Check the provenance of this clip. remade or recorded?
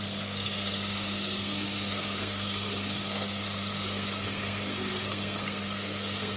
remade